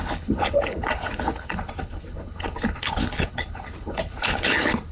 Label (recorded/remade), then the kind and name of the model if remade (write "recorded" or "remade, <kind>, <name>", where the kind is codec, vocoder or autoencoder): remade, codec, HILCodec